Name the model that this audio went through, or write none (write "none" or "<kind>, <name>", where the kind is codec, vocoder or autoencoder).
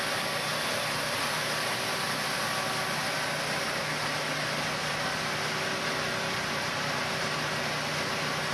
none